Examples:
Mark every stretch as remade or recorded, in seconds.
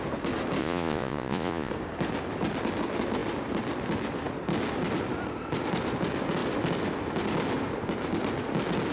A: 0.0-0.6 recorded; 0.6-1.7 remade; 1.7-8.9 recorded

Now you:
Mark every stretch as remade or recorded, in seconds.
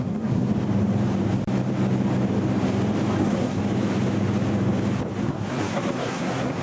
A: 0.0-0.5 remade; 0.5-3.2 recorded; 3.2-3.6 remade; 3.6-5.2 recorded; 5.2-6.6 remade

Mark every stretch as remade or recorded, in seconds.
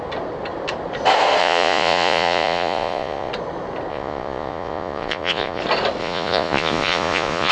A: 0.0-1.4 recorded; 1.4-3.3 remade; 3.3-3.9 recorded; 3.9-5.6 remade; 5.6-6.0 recorded; 6.0-7.5 remade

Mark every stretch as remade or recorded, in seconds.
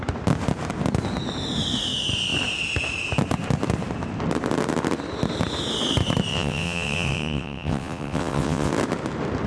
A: 0.0-6.3 recorded; 6.3-8.7 remade; 8.7-9.5 recorded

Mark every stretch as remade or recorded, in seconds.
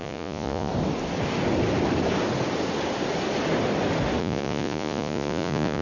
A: 0.0-0.7 remade; 0.7-4.2 recorded; 4.2-5.8 remade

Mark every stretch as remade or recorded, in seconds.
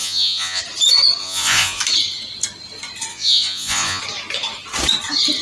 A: 0.0-0.6 remade; 0.6-1.2 recorded; 1.2-1.8 remade; 1.8-3.1 recorded; 3.1-4.0 remade; 4.0-5.4 recorded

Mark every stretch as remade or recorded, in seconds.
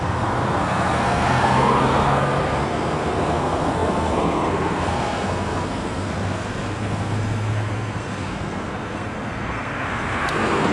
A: 0.0-10.7 remade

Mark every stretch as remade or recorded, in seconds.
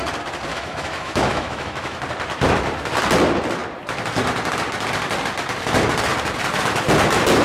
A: 0.0-0.5 recorded; 0.5-2.0 remade; 2.0-7.4 recorded